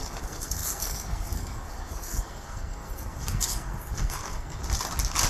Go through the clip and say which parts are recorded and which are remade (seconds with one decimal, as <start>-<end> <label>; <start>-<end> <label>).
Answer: 0.0-4.6 remade; 4.6-5.3 recorded